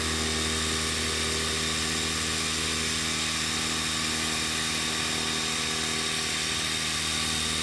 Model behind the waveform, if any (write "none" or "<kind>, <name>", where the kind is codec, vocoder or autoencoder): none